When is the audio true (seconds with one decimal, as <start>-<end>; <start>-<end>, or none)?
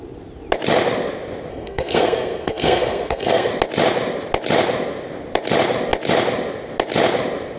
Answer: 0.0-1.5; 3.5-7.6